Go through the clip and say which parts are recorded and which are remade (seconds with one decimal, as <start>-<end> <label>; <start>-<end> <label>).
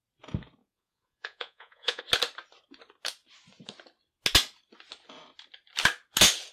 0.0-0.6 recorded; 0.6-2.0 remade; 2.0-6.5 recorded